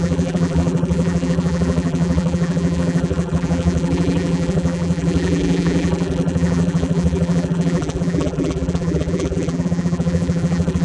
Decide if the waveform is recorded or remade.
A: remade